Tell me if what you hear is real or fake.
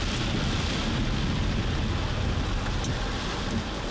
real